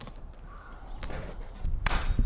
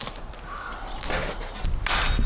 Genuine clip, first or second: second